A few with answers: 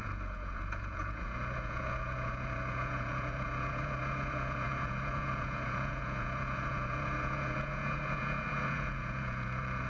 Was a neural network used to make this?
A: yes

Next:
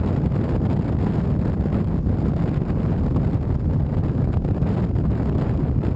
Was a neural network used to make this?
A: no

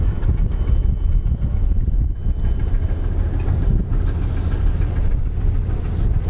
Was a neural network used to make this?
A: no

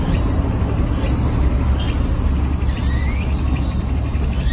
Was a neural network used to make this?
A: no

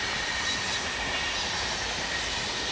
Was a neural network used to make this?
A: no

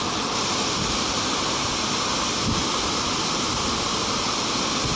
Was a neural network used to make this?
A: no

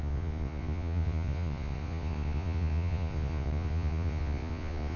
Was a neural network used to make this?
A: yes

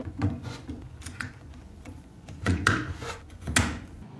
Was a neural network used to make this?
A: yes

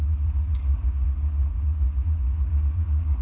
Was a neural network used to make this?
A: yes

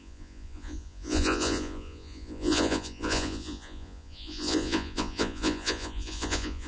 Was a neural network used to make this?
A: yes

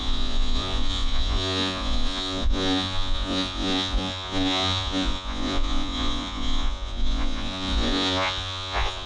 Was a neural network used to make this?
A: yes